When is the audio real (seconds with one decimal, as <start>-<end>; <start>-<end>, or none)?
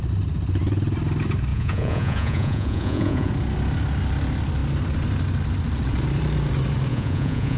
0.0-1.5; 3.3-6.9